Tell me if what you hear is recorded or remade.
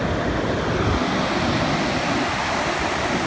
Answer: recorded